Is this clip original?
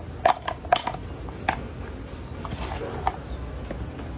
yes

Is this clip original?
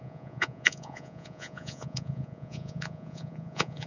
no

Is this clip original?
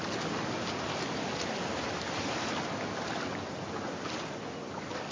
yes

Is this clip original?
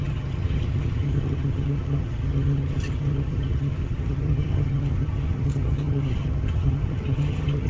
no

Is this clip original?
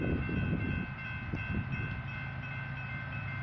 yes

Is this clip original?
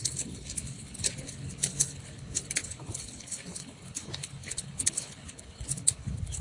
no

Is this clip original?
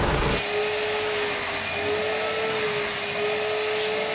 yes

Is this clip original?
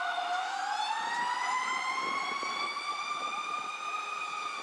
yes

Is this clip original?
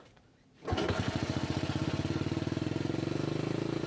yes